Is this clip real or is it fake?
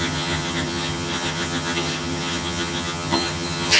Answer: fake